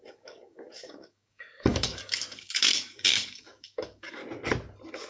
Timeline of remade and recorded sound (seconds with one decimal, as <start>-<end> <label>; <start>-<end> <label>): 0.0-4.2 remade; 4.2-5.1 recorded